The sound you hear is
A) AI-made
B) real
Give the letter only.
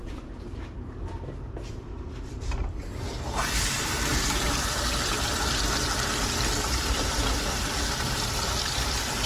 A